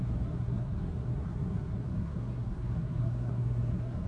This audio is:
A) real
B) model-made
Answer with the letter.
B